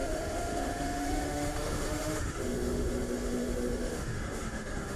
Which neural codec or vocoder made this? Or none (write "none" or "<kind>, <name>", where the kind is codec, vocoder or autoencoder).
autoencoder, DAC-VAE